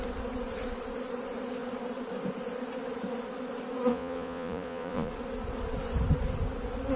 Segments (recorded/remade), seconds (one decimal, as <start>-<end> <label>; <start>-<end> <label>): 0.0-3.9 recorded; 3.9-5.1 remade; 5.1-7.0 recorded